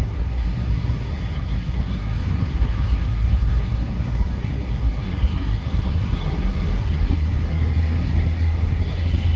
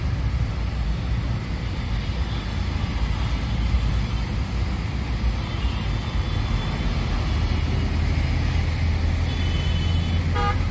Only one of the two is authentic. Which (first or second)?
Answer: second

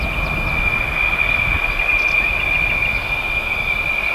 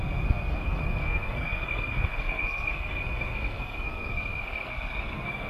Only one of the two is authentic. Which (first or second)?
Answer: first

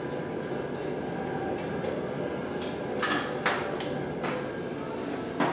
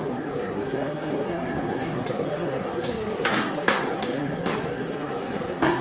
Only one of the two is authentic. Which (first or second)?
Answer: first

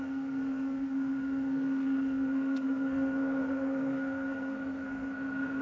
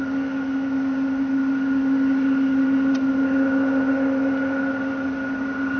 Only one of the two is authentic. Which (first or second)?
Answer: second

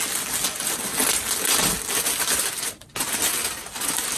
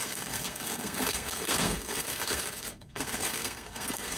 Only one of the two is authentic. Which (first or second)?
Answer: first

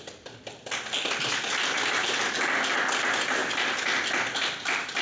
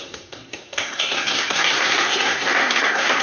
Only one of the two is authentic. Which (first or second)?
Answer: first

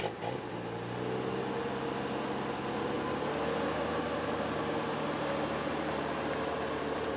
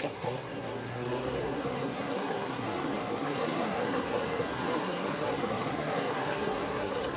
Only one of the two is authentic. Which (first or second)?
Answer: first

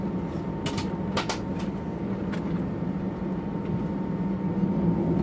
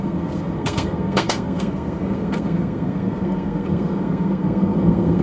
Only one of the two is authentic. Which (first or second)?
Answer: first